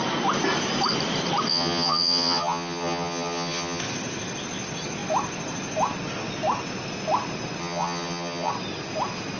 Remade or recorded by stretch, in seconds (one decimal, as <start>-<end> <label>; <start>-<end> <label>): 0.0-1.5 recorded; 1.5-3.8 remade; 3.8-7.6 recorded; 7.6-8.5 remade; 8.5-9.4 recorded